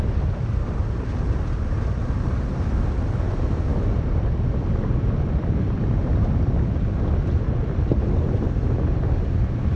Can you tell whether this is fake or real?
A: real